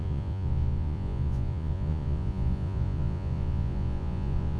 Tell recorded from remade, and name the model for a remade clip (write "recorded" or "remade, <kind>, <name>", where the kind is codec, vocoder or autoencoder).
remade, vocoder, Vocos